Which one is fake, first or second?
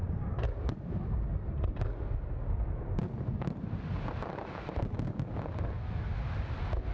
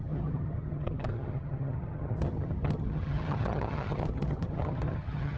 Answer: second